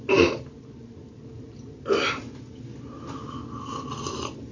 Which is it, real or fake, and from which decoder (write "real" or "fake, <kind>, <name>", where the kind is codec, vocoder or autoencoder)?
real